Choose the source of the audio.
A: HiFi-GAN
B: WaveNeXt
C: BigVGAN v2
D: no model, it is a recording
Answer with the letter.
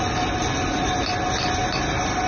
D